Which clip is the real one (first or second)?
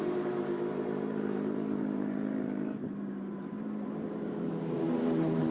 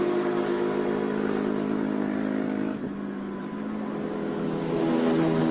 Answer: second